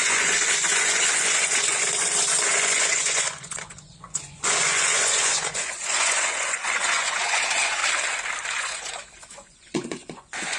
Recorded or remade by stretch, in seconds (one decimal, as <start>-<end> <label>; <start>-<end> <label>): 0.0-7.8 remade; 7.8-8.5 recorded; 8.5-10.6 remade